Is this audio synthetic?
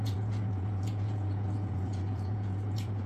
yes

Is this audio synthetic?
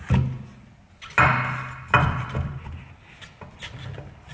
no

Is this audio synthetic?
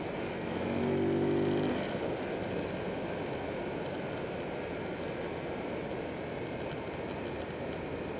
no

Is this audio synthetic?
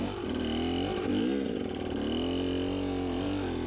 no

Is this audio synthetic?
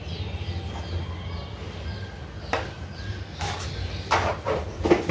no